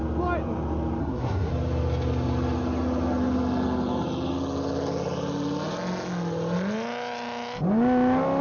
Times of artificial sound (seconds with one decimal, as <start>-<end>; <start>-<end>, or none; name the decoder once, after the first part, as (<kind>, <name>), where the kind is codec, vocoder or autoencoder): 1.0-1.5 (codec, SNAC)